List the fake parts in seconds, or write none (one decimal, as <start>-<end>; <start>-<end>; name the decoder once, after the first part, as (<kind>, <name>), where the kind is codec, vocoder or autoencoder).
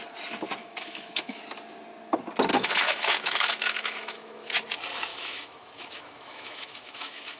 0.6-1.4 (autoencoder, DAC-VAE); 2.5-4.5; 5.1-7.4